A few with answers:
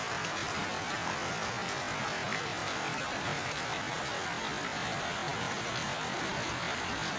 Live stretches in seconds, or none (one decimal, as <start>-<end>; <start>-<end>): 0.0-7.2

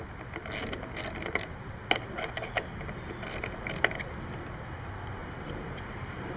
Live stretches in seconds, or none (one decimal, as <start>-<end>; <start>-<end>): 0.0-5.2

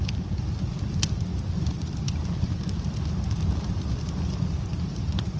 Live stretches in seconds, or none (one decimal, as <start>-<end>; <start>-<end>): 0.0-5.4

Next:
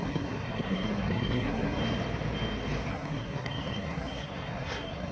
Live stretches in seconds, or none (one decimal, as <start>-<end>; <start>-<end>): 1.8-2.9